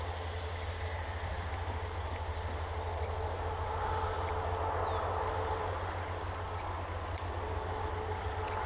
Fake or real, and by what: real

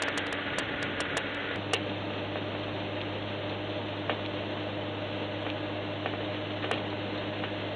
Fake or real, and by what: real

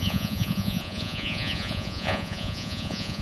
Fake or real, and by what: fake, vocoder, Vocos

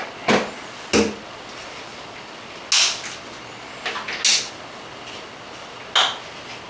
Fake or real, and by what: real